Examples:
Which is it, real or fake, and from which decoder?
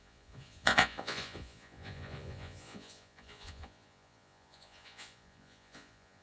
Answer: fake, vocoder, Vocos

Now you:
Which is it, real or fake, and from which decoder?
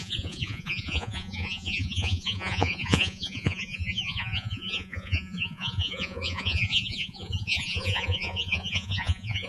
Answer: fake, vocoder, Vocos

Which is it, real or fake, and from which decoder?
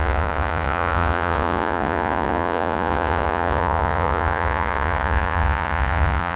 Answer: fake, vocoder, Vocos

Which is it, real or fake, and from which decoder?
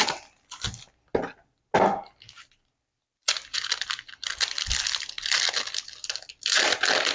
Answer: real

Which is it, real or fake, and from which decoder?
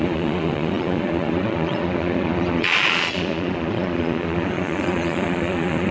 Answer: fake, vocoder, Vocos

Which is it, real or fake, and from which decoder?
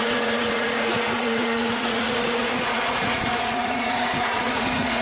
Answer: fake, vocoder, Vocos